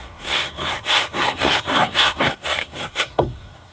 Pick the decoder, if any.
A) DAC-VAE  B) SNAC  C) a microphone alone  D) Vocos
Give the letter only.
B